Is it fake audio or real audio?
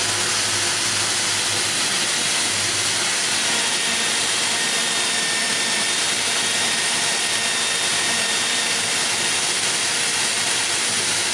real